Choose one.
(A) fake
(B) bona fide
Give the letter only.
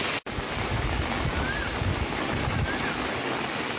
B